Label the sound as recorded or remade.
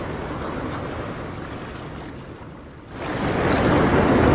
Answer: recorded